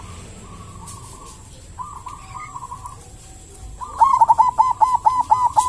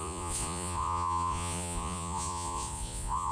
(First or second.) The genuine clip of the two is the first